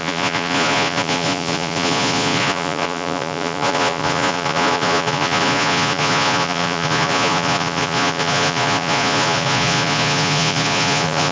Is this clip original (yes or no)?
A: no